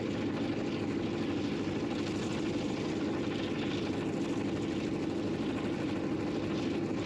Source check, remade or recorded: recorded